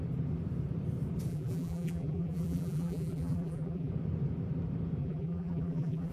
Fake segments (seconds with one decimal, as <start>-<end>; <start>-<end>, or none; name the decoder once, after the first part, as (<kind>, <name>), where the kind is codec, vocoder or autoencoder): 1.3-3.9 (vocoder, BigVGAN v2); 5.0-6.1